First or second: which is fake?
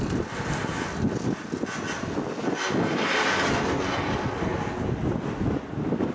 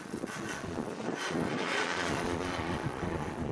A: second